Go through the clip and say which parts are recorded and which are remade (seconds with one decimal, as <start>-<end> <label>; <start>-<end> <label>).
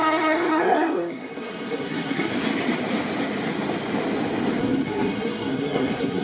0.0-2.3 remade; 2.3-4.6 recorded; 4.6-6.2 remade